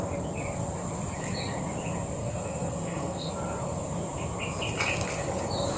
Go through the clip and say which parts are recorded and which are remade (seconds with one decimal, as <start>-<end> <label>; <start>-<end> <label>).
0.0-2.2 recorded; 2.2-3.3 remade; 3.3-5.8 recorded